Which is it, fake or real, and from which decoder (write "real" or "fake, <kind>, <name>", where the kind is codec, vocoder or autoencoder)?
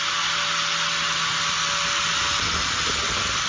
real